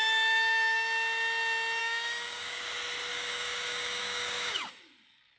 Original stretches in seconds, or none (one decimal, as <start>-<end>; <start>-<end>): 0.0-1.8; 2.6-3.1; 4.7-5.4